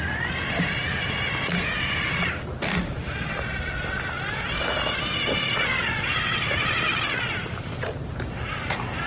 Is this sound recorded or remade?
recorded